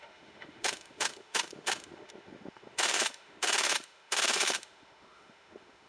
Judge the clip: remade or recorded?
remade